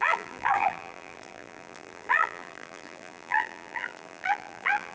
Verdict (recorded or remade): remade